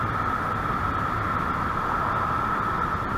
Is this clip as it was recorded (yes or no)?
yes